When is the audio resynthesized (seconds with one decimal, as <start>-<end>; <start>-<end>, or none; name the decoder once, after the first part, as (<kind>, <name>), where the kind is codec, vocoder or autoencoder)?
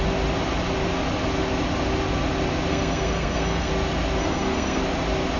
2.7-3.7 (codec, SNAC); 4.2-4.8